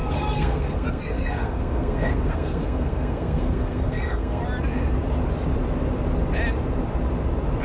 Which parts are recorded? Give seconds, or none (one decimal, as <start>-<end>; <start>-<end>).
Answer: 4.4-7.6